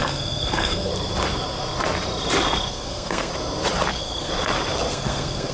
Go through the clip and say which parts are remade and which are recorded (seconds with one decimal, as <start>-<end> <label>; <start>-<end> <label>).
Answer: 0.0-0.9 remade; 0.9-2.7 recorded; 2.7-3.3 remade; 3.3-3.9 recorded; 3.9-4.3 remade; 4.3-4.9 recorded; 4.9-5.5 remade